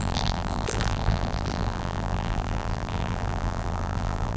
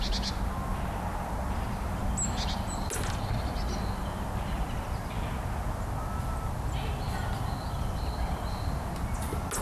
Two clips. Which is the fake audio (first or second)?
first